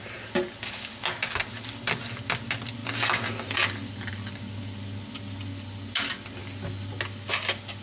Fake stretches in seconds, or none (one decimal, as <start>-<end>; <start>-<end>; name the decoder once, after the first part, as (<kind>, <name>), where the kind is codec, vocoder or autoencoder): none